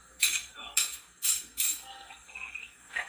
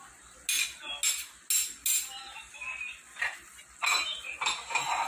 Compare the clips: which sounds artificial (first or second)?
first